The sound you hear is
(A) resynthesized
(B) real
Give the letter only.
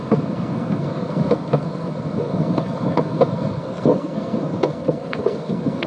A